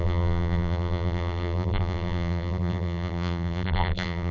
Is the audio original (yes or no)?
no